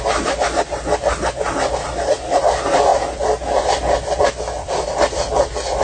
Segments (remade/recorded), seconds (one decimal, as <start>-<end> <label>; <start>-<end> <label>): 0.0-5.8 recorded